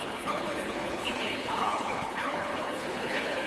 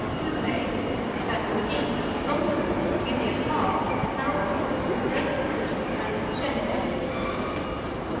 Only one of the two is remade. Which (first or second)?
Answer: first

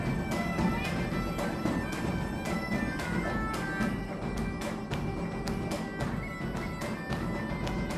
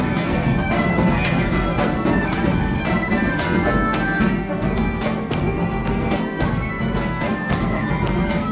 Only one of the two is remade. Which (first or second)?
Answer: second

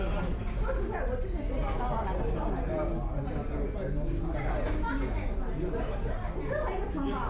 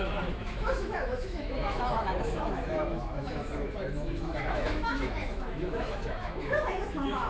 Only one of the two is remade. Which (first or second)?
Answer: second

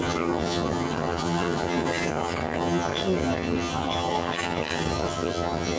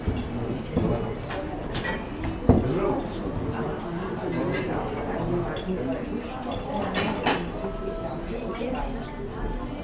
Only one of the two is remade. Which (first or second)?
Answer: first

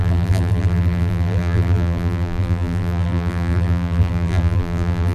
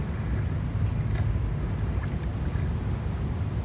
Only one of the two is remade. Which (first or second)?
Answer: first